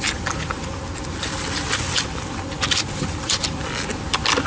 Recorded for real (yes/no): no